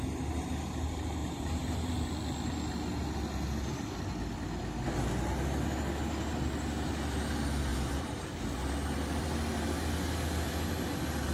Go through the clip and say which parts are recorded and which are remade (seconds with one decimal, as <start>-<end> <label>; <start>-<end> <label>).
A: 0.0-1.2 recorded; 1.2-1.9 remade; 1.9-7.7 recorded; 7.7-8.3 remade; 8.3-11.3 recorded